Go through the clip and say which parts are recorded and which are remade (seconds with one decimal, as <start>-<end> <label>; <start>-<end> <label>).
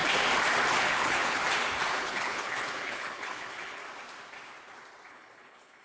0.0-0.8 recorded; 0.8-1.4 remade; 1.4-1.9 recorded; 1.9-3.8 remade; 3.8-5.1 recorded; 5.1-5.8 remade